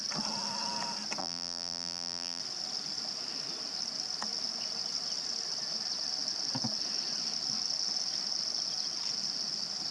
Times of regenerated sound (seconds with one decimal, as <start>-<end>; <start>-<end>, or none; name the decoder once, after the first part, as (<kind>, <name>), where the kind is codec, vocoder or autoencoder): 1.2-2.4 (vocoder, BigVGAN v2)